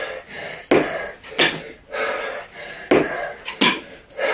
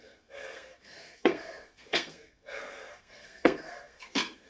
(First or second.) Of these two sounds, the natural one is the first